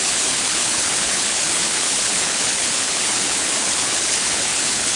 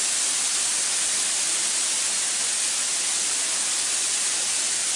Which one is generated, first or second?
first